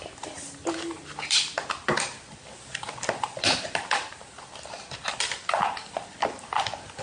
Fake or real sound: real